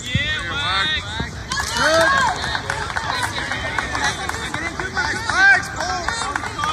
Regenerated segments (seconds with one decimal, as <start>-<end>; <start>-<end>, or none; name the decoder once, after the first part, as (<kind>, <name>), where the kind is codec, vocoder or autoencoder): none